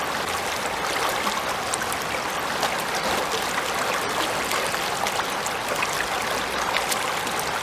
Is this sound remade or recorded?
recorded